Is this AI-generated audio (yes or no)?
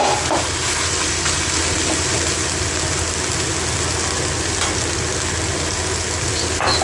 no